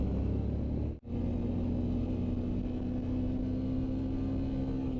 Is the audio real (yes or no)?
yes